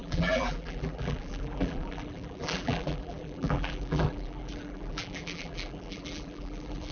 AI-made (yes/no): yes